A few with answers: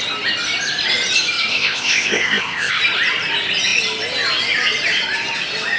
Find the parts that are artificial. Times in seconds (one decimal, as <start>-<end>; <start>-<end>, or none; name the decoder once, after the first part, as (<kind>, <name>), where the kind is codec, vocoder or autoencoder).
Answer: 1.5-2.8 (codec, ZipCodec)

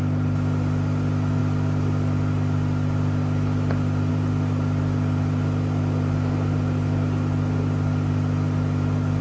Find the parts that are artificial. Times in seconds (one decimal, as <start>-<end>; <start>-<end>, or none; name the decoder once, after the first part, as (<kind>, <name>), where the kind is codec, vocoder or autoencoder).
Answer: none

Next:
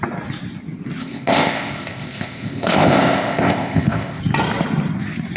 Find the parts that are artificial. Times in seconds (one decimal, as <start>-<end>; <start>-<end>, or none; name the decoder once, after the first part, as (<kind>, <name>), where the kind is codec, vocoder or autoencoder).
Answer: 1.0-4.2 (codec, ZipCodec)